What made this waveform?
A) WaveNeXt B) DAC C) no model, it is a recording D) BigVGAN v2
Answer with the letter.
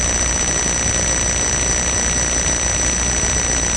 C